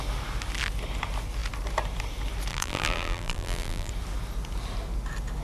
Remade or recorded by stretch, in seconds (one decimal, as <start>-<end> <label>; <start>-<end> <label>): 0.0-2.5 recorded; 2.5-3.9 remade; 3.9-5.4 recorded